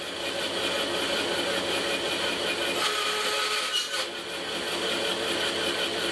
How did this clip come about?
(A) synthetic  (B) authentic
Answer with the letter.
B